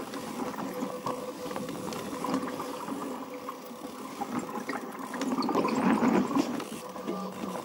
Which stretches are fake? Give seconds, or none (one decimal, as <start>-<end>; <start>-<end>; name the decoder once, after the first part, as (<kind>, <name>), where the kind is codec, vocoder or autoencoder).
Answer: none